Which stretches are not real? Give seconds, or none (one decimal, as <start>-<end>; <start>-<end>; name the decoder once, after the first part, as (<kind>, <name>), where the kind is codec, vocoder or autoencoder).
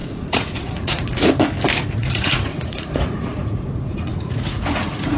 0.0-1.3 (vocoder, Vocos); 2.0-5.2